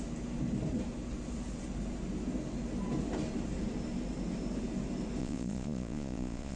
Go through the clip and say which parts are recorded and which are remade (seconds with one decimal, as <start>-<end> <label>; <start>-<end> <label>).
0.0-5.2 recorded; 5.2-6.6 remade